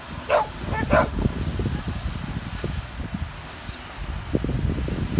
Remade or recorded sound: recorded